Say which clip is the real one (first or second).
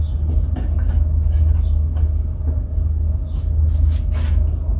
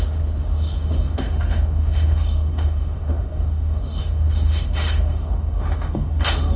first